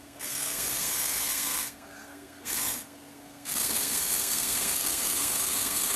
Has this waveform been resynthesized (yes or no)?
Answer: yes